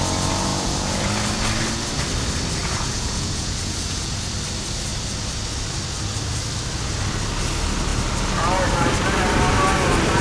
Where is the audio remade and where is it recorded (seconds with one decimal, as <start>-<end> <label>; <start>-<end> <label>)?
0.0-0.5 recorded; 0.5-1.1 remade; 1.1-2.6 recorded; 2.6-4.3 remade; 4.3-10.2 recorded